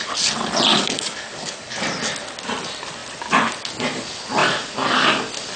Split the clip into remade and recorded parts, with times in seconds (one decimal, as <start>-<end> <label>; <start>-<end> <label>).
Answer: 0.0-0.7 recorded; 0.7-1.8 remade; 1.8-5.6 recorded